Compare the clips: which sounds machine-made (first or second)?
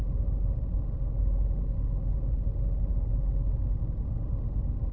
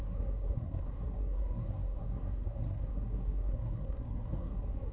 second